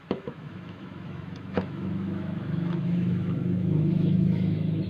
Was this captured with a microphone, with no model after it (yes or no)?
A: no